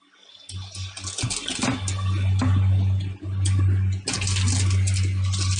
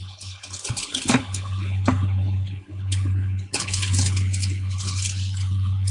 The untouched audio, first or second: first